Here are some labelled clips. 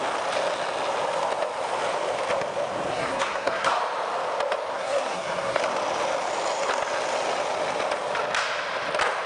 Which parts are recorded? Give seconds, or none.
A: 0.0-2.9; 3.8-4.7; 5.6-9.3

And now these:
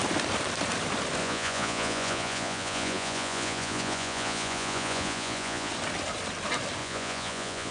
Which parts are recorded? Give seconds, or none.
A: 0.0-1.2; 5.7-6.8

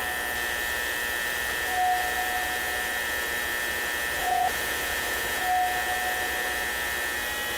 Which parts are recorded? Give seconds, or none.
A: 0.0-4.2; 5.4-7.6

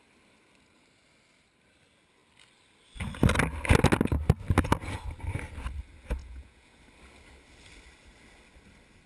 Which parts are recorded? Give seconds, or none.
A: 0.0-6.2; 6.8-9.1